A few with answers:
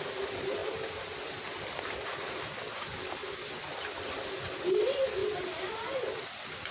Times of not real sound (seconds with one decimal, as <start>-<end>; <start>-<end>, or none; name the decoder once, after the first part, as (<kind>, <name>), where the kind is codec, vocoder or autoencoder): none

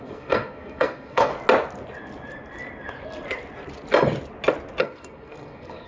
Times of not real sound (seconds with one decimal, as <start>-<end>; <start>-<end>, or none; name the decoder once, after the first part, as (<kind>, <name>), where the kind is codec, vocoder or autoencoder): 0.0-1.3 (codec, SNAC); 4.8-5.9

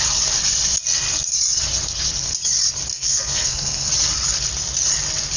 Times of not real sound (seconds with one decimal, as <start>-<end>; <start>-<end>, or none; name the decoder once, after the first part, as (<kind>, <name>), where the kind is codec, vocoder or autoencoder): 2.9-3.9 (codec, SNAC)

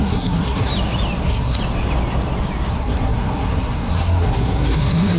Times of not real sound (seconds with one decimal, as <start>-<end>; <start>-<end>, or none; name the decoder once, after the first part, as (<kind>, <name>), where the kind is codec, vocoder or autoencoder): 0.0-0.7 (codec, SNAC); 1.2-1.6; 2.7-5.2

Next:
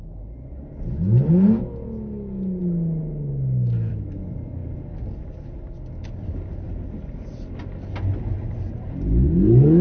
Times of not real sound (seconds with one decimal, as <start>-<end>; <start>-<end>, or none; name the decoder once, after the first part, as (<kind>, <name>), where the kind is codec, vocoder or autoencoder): none

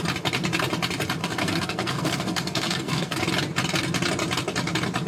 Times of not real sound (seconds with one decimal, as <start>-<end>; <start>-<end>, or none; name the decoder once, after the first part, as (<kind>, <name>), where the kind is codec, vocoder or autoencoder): 1.2-3.2 (codec, SNAC)

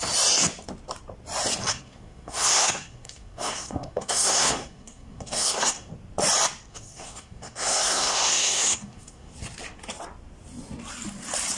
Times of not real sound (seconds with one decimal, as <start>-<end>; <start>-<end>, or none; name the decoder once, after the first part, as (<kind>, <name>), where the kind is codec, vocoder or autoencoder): 1.7-5.9 (codec, SNAC); 6.7-9.3